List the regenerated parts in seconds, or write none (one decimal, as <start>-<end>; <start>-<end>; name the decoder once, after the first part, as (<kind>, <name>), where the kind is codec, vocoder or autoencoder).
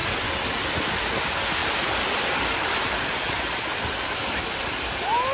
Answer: 1.6-4.8 (vocoder, BigVGAN v2)